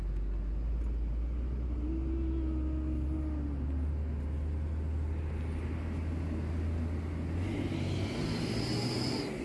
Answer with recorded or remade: recorded